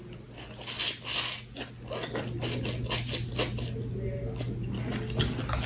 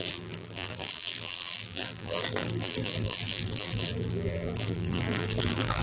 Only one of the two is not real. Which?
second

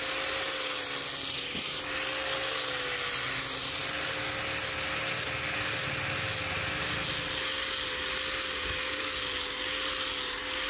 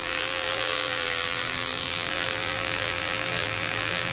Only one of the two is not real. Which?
second